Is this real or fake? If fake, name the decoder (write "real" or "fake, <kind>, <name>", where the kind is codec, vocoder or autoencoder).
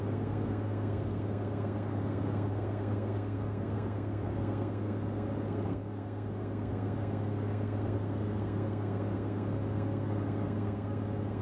fake, codec, SNAC